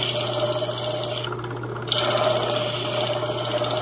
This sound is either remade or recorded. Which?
recorded